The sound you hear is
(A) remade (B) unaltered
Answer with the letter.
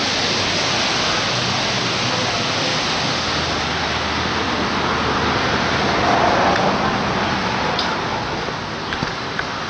B